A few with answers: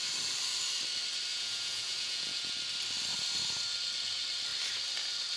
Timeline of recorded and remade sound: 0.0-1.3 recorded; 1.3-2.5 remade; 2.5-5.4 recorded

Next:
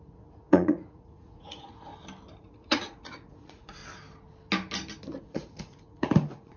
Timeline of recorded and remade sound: 0.0-1.9 remade; 1.9-2.4 recorded; 2.4-3.8 remade; 3.8-5.2 recorded; 5.2-6.6 remade

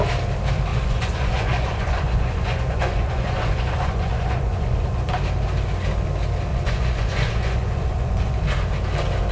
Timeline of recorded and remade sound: 0.0-0.7 recorded; 0.7-5.1 remade; 5.1-6.5 recorded; 6.5-8.4 remade; 8.4-9.3 recorded

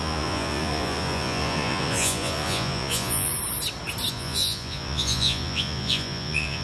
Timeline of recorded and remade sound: 0.0-3.3 remade; 3.3-4.1 recorded; 4.1-6.6 remade

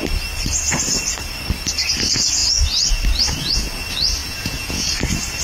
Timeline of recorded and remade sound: 0.0-4.2 recorded; 4.2-4.9 remade; 4.9-5.4 recorded

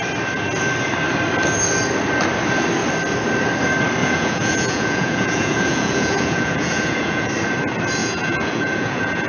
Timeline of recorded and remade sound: 0.0-4.0 recorded; 4.0-7.3 remade; 7.3-8.0 recorded; 8.0-9.3 remade

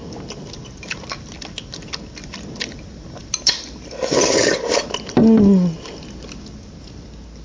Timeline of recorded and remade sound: 0.0-7.4 recorded